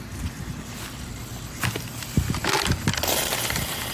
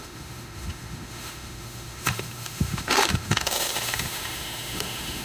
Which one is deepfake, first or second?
second